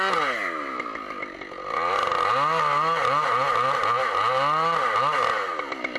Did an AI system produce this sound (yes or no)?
no